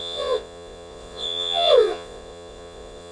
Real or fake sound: fake